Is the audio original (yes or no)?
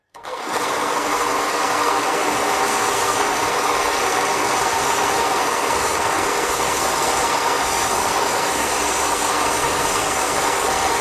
no